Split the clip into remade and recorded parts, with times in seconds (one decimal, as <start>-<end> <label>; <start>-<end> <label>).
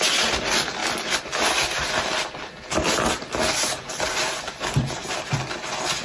0.0-0.8 recorded; 0.8-4.4 remade; 4.4-6.0 recorded